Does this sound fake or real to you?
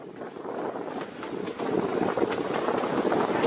real